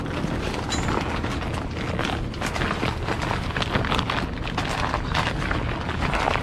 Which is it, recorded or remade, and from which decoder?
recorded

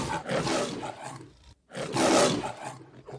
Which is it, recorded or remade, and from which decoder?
recorded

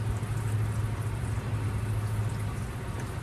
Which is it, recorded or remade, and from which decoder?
recorded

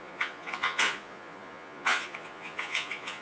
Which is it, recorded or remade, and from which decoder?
remade, vocoder, Vocos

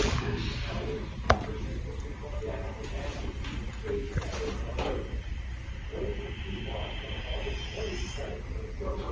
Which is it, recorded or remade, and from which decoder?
recorded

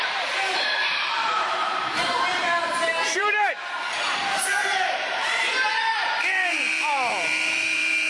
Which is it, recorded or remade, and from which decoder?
remade, vocoder, BigVGAN v2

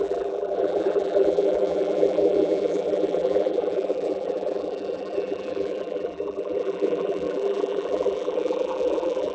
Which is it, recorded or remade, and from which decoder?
remade, vocoder, BigVGAN v2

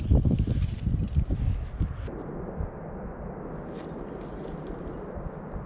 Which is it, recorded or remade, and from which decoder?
recorded